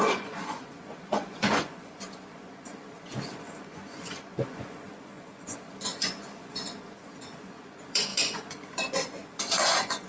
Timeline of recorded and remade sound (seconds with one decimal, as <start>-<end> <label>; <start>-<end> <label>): 0.0-10.1 remade